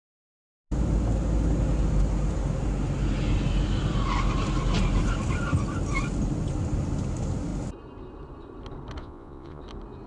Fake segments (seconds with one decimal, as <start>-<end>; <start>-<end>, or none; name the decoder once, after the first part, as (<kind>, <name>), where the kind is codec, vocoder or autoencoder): 9.0-9.6 (vocoder, Vocos)